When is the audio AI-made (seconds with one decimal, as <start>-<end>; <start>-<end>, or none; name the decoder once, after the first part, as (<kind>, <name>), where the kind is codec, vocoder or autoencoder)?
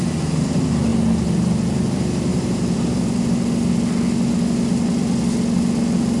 0.9-3.0 (vocoder, BigVGAN v2)